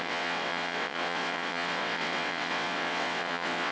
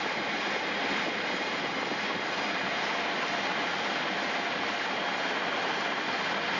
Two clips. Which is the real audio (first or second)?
second